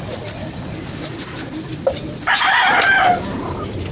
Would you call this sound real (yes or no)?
yes